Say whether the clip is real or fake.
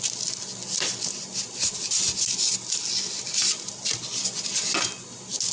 real